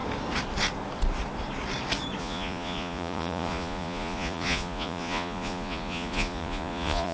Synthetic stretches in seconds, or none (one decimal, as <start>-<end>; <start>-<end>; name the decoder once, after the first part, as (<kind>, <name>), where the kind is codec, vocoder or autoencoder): 2.2-7.1 (vocoder, Vocos)